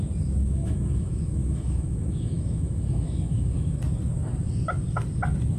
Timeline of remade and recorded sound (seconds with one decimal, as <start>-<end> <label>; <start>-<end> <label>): 0.0-0.4 recorded; 0.4-3.8 remade; 3.8-5.6 recorded